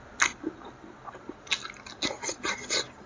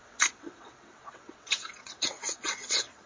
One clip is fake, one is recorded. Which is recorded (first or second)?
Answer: first